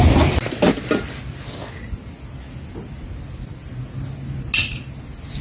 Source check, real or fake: real